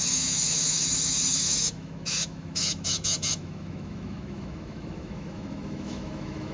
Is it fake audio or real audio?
fake